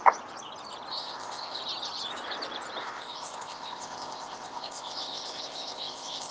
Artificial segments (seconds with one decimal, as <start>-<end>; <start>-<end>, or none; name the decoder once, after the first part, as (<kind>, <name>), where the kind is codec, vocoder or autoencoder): 0.9-1.6 (codec, ZipCodec); 2.8-6.3